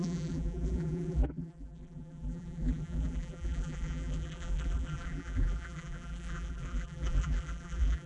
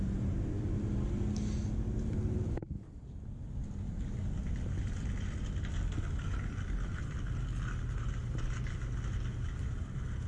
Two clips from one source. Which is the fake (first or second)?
first